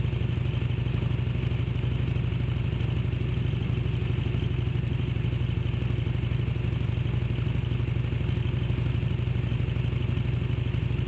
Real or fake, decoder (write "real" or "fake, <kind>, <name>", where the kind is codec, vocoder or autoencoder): real